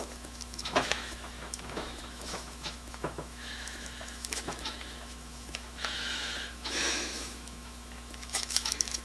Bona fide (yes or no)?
no